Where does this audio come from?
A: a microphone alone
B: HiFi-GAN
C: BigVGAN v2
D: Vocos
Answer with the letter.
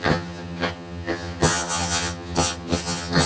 B